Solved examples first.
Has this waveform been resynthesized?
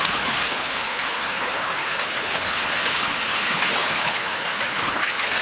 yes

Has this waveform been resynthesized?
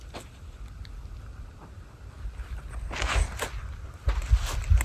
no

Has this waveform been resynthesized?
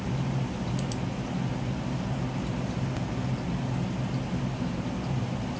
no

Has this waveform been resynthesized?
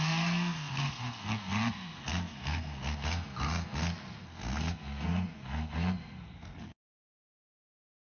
yes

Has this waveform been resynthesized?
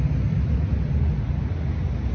no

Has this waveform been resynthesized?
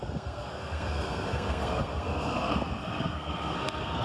yes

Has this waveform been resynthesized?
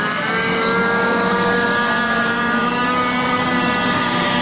yes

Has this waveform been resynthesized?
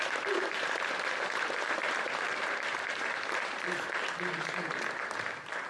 yes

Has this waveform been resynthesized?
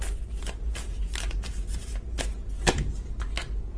no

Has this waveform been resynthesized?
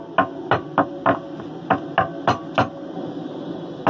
no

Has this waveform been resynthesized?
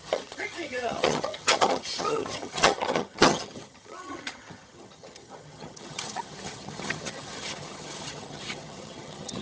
yes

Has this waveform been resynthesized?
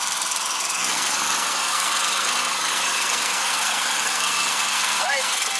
yes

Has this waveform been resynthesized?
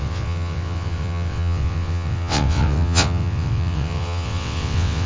yes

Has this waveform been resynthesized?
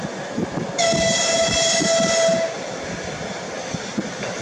no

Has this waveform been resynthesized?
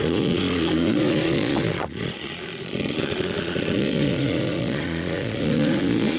yes